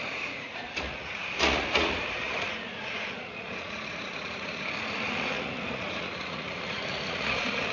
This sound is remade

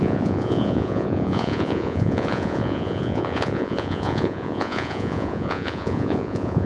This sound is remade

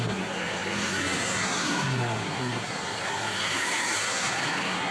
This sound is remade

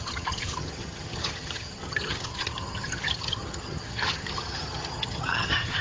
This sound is remade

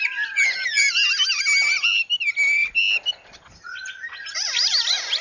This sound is recorded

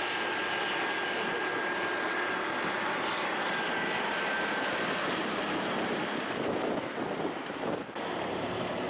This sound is recorded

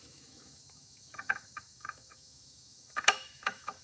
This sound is remade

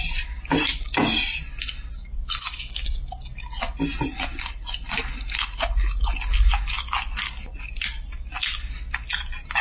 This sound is recorded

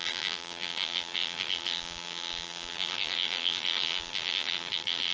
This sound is remade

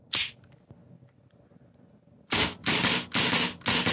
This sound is recorded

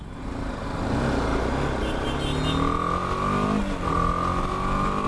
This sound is recorded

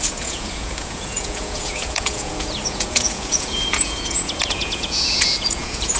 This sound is remade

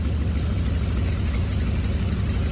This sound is recorded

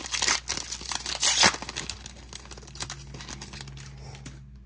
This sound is recorded